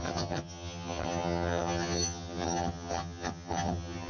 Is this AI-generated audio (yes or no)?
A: yes